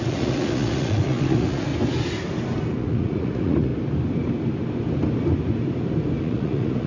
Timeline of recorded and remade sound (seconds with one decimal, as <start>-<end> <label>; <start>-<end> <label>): 0.0-1.7 remade; 1.7-2.8 recorded; 2.8-3.7 remade; 3.7-6.2 recorded; 6.2-6.9 remade